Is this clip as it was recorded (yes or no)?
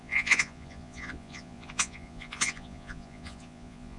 no